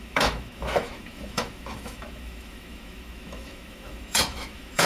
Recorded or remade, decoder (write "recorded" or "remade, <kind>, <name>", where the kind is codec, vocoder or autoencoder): remade, autoencoder, DAC-VAE